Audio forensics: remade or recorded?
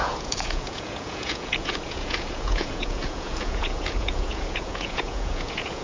remade